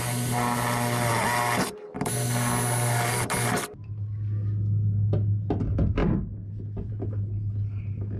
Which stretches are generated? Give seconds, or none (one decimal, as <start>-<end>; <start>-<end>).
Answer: none